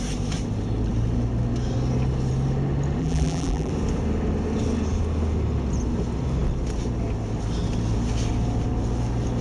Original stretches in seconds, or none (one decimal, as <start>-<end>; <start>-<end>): 0.0-3.0; 3.7-9.4